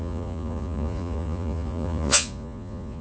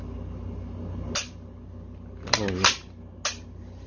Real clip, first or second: second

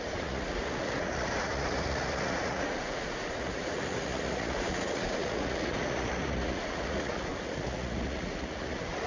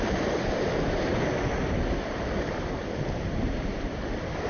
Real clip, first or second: second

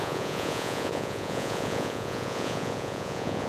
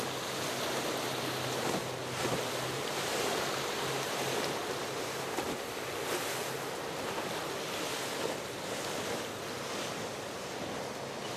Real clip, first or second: second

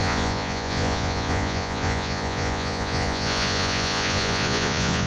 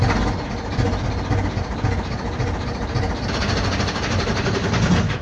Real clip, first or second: second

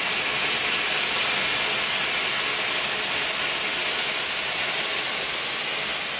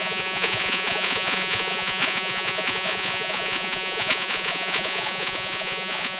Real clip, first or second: first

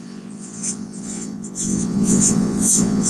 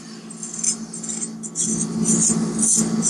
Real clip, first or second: second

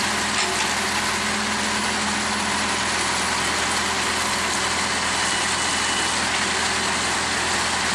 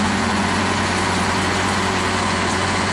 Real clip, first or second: first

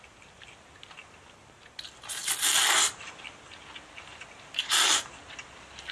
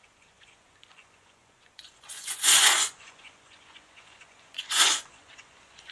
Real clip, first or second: first